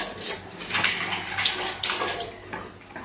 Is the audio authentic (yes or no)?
yes